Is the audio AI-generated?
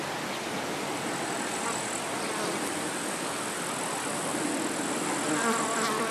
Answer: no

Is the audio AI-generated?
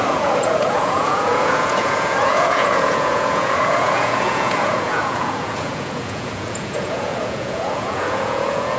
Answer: yes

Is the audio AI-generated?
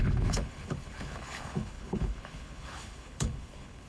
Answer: yes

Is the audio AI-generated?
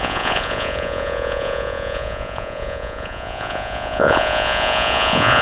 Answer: yes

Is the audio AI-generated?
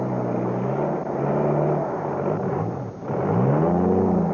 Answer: no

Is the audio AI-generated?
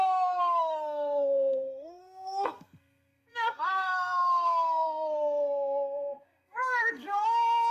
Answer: yes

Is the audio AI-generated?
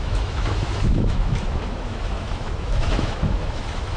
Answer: yes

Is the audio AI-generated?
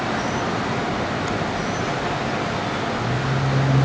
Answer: no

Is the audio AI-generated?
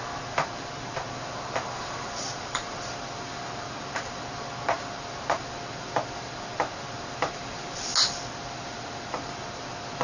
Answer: no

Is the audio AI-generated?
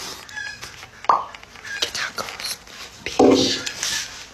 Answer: no